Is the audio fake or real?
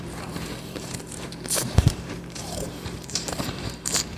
fake